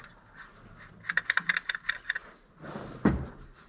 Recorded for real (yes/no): yes